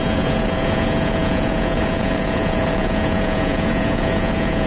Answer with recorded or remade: remade